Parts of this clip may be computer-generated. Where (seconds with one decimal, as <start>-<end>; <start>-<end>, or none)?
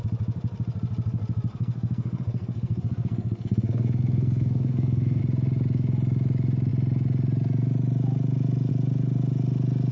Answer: 1.5-5.2